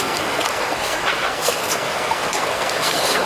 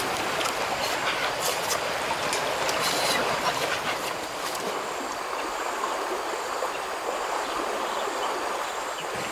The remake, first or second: first